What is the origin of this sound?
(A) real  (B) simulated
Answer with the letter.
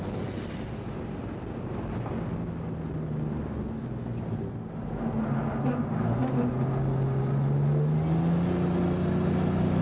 A